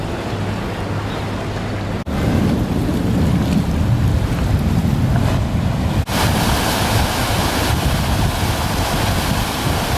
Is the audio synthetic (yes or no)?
no